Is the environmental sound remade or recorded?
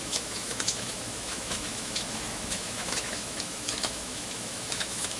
remade